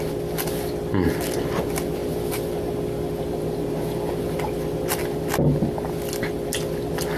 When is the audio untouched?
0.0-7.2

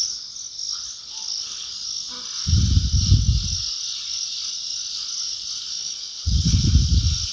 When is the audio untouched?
0.0-1.0; 1.7-5.8; 6.7-7.3

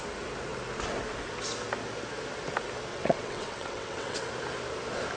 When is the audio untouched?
0.0-2.9; 4.3-5.2

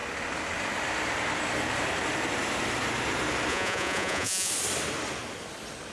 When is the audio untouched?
0.0-3.5; 4.5-5.9